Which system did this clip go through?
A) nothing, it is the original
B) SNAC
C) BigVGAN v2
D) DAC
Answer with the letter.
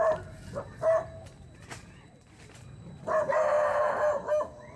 A